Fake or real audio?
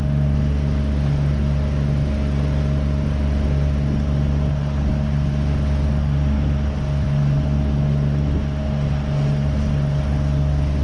real